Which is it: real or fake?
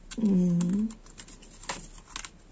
real